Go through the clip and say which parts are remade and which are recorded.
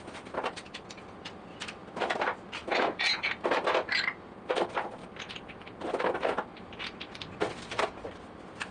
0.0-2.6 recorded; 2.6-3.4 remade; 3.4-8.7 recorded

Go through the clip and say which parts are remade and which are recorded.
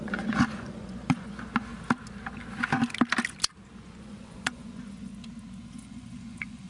0.0-1.7 remade; 1.7-3.7 recorded; 3.7-5.1 remade; 5.1-5.7 recorded; 5.7-6.7 remade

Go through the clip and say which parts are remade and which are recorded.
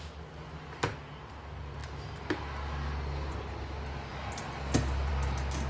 0.0-5.7 recorded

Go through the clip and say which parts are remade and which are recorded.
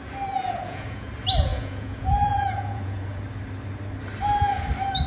0.0-0.4 recorded; 0.4-1.1 remade; 1.1-1.5 recorded; 1.5-3.2 remade; 3.2-5.1 recorded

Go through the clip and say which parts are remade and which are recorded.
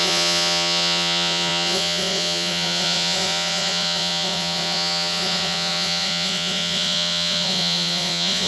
0.0-8.5 remade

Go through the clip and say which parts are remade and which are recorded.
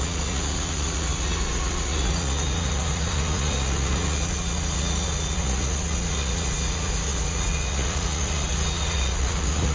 0.0-9.7 remade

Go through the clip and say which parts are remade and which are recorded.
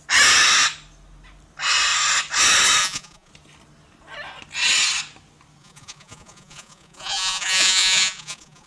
0.0-2.8 recorded; 2.8-3.3 remade; 3.3-5.6 recorded; 5.6-8.7 remade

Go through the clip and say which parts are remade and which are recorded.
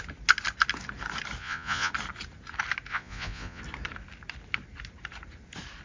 0.0-1.4 recorded; 1.4-1.9 remade; 1.9-2.9 recorded; 2.9-3.6 remade; 3.6-5.8 recorded